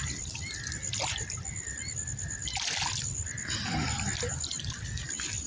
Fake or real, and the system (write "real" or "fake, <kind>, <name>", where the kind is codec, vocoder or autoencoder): real